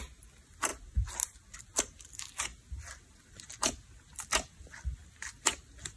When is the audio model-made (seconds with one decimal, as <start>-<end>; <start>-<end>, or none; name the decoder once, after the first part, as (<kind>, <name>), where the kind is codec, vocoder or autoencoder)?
none